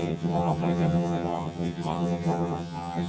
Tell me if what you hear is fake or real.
fake